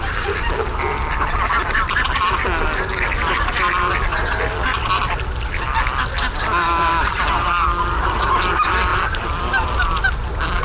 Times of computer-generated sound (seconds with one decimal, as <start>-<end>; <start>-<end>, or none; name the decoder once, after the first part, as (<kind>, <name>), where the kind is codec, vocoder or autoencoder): none